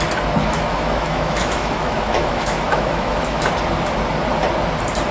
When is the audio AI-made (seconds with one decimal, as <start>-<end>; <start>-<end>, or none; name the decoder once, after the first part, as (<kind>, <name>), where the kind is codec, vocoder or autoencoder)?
0.4-3.5 (autoencoder, DAC-VAE)